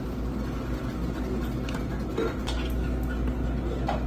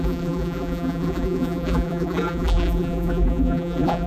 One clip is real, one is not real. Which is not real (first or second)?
second